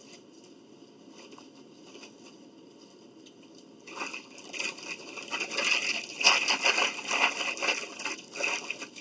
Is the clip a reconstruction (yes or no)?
no